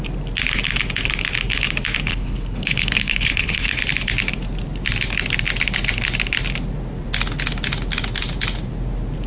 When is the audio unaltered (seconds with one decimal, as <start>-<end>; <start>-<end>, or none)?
0.0-2.1; 3.8-9.3